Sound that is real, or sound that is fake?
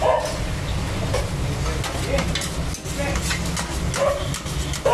real